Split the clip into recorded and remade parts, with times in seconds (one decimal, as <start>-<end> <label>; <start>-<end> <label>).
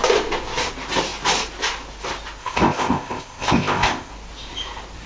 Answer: 0.0-2.4 recorded; 2.4-4.1 remade; 4.1-5.1 recorded